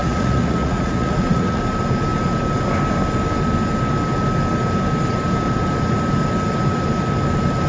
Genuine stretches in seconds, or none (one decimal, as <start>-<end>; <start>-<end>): 1.6-7.7

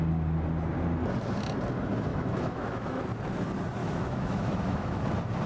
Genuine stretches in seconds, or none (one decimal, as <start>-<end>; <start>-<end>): 0.0-2.1; 3.0-3.8; 5.0-5.5